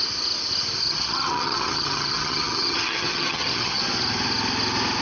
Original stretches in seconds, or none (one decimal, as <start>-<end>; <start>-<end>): 0.0-0.8; 3.8-5.0